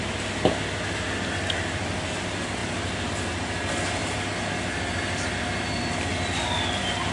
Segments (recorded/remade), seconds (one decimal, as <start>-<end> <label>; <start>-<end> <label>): 0.0-7.1 recorded